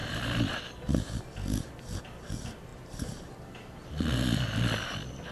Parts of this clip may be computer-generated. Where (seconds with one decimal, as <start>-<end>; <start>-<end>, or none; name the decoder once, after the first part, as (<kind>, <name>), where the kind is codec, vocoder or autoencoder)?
0.0-0.6 (vocoder, BigVGAN v2); 2.7-3.3